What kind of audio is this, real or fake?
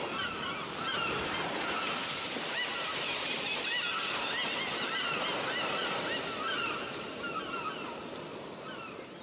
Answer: real